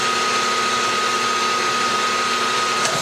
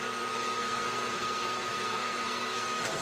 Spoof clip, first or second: second